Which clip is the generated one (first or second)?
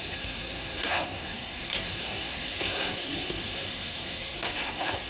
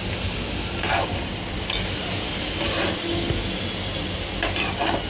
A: first